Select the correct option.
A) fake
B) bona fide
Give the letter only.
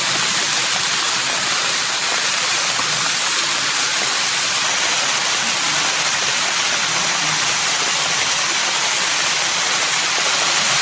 B